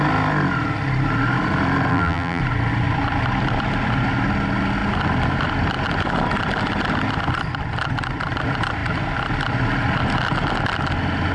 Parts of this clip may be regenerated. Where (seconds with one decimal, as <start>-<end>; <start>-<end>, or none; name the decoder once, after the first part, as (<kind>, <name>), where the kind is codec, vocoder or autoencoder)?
1.9-2.4 (vocoder, BigVGAN v2)